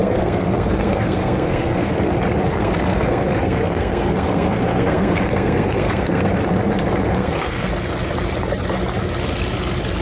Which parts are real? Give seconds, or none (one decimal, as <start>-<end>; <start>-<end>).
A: 2.1-2.5; 6.3-7.1; 7.7-10.0